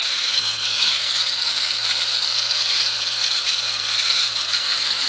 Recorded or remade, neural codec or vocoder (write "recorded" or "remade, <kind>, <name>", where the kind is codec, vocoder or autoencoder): remade, codec, SNAC